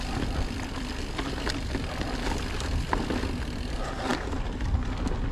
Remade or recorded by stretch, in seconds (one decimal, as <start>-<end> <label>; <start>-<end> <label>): 0.0-5.3 recorded